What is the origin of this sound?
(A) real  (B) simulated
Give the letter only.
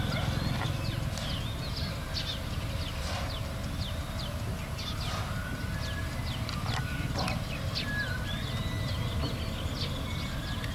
A